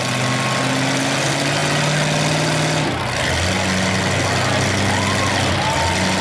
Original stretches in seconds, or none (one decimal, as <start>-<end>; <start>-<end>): 0.0-6.2